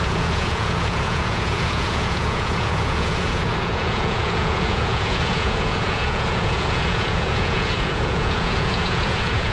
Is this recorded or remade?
remade